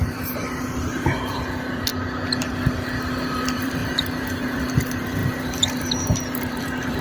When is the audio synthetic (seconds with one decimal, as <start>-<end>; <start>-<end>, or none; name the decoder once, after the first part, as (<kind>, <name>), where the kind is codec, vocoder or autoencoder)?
0.0-1.9 (vocoder, BigVGAN v2); 3.1-7.0